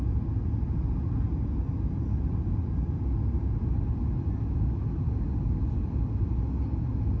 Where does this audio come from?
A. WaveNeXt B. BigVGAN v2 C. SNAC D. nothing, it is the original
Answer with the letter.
D